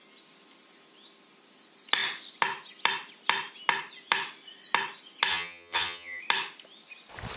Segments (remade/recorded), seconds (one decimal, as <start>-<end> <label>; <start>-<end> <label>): 0.0-5.3 recorded; 5.3-6.2 remade; 6.2-7.4 recorded